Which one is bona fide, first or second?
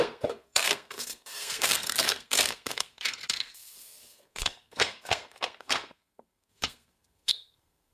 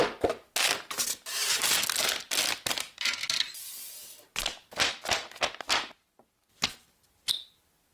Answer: second